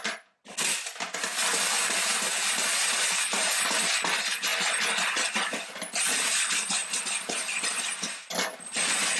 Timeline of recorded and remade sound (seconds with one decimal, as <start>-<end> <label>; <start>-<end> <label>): 0.0-9.2 recorded